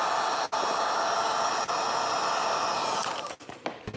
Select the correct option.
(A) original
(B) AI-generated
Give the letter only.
A